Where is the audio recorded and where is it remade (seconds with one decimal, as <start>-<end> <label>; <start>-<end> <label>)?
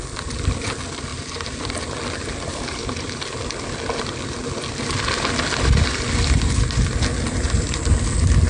0.0-8.5 recorded